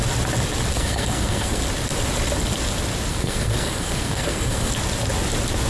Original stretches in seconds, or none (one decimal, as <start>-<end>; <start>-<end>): 0.0-0.7; 1.6-3.1; 4.7-5.7